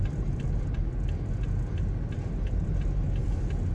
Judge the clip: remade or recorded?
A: recorded